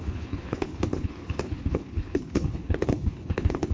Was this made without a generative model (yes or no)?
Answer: no